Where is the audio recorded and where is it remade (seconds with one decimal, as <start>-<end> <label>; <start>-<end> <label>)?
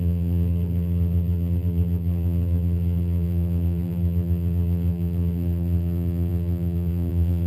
0.0-7.5 remade